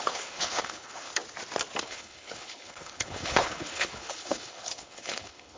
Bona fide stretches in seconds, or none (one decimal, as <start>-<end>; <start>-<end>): 1.1-1.8